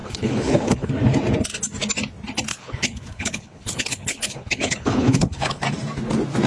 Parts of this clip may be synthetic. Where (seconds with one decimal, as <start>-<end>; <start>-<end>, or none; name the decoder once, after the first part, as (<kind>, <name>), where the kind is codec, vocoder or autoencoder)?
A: 0.0-0.9 (codec, HILCodec); 2.5-5.6